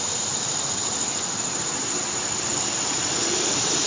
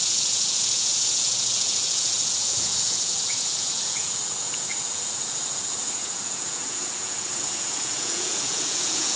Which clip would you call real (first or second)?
first